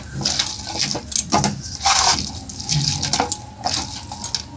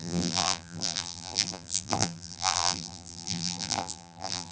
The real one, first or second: first